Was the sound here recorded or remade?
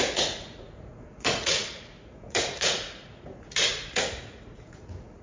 remade